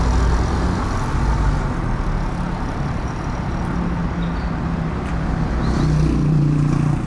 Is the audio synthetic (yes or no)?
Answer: no